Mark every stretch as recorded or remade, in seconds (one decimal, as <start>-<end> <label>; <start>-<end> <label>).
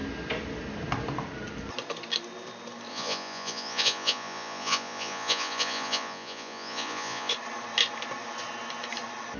0.0-2.9 recorded; 2.9-7.3 remade; 7.3-9.4 recorded